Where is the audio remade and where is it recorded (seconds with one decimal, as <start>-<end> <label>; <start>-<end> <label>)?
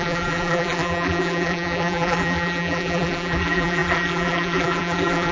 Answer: 0.0-5.3 remade